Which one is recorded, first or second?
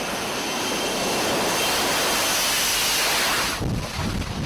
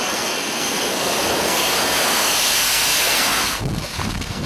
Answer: first